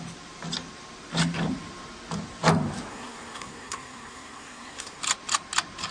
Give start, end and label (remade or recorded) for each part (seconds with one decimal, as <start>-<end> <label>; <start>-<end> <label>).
0.0-2.9 recorded; 2.9-5.0 remade; 5.0-5.9 recorded